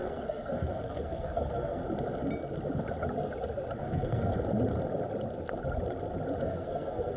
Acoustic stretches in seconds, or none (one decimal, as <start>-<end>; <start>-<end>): 1.8-3.8; 4.3-6.4